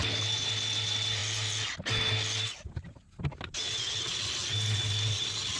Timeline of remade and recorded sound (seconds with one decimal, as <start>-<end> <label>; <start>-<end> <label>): 0.0-5.6 recorded